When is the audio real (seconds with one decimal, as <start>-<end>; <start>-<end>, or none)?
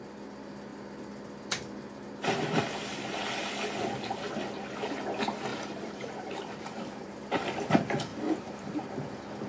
0.0-5.5; 7.2-8.1; 8.8-9.5